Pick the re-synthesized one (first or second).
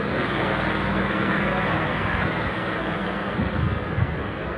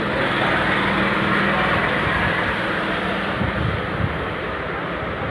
first